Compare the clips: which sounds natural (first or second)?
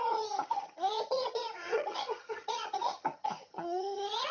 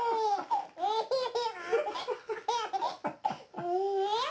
second